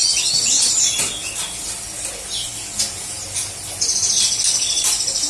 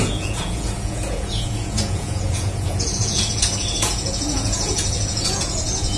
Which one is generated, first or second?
second